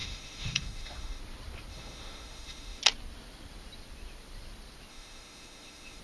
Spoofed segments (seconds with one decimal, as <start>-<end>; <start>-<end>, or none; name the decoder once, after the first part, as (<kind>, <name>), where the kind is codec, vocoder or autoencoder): 0.0-1.2 (autoencoder, DAC-VAE); 1.7-2.8; 4.9-6.0